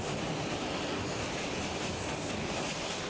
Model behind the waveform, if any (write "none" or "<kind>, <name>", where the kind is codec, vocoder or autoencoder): none